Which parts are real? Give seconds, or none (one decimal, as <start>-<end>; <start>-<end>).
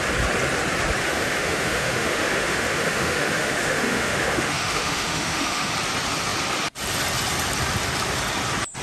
0.0-1.0; 5.7-8.8